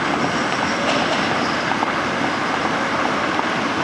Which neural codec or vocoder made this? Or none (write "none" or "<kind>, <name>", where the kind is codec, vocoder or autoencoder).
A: none